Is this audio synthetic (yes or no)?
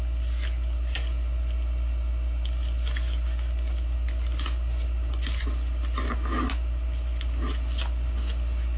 no